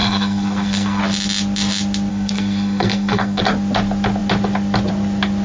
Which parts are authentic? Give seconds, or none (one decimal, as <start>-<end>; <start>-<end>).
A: 1.0-2.1; 3.4-5.4